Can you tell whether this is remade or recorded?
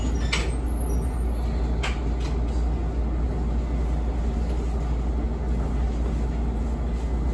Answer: recorded